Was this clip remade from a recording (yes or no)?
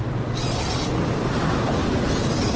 no